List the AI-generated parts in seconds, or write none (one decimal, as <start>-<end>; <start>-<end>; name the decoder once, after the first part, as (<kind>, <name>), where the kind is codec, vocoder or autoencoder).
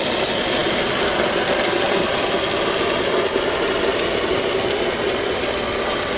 none